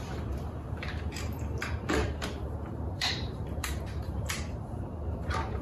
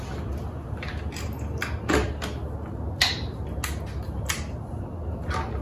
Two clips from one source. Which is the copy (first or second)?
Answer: first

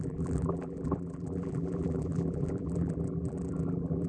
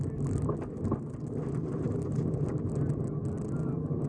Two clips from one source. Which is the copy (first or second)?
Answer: first